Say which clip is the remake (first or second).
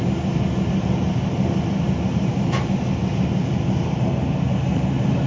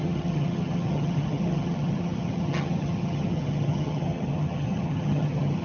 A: second